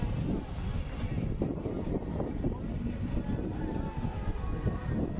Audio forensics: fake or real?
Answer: real